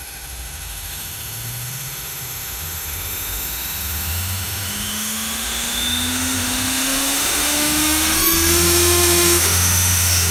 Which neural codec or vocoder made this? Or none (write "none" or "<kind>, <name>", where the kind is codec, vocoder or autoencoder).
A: autoencoder, DAC-VAE